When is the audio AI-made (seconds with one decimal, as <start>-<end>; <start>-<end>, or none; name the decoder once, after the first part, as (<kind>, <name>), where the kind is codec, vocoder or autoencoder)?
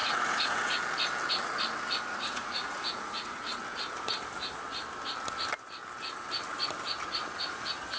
0.0-0.8 (vocoder, Vocos); 2.1-3.6